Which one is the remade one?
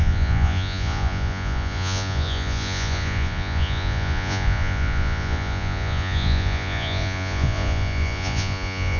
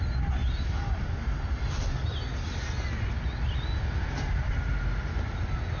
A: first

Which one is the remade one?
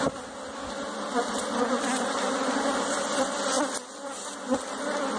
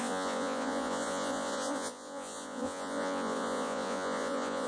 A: second